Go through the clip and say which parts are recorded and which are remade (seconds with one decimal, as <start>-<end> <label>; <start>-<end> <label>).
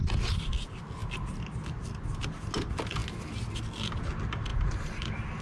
0.0-5.4 recorded